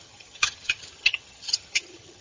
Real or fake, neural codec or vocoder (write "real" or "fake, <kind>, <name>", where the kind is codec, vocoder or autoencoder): fake, vocoder, HiFi-GAN